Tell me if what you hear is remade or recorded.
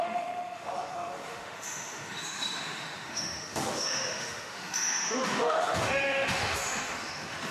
remade